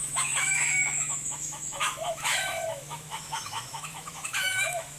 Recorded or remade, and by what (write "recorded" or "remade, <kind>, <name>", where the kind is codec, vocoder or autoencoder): remade, autoencoder, DAC-VAE